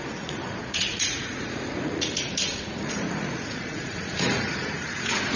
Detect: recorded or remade remade